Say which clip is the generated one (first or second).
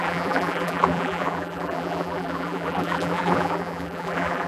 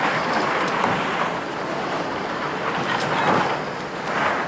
first